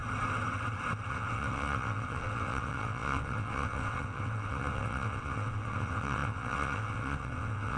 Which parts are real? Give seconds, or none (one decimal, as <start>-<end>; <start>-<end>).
0.0-1.1